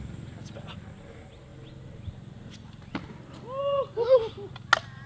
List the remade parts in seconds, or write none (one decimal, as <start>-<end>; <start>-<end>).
none